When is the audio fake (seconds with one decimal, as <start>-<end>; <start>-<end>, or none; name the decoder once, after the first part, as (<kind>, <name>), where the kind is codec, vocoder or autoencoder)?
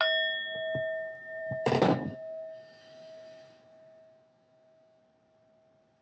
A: 1.4-5.0 (autoencoder, DAC-VAE)